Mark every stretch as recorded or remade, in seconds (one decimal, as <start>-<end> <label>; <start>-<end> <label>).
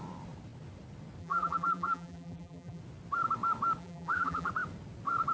0.0-1.2 recorded; 1.2-2.8 remade; 2.8-3.8 recorded; 3.8-4.5 remade; 4.5-5.3 recorded